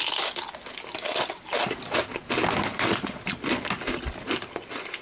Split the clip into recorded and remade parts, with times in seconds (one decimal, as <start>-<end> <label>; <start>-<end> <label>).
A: 0.0-2.7 recorded; 2.7-3.3 remade; 3.3-5.0 recorded